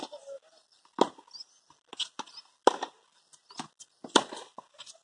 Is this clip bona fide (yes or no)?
yes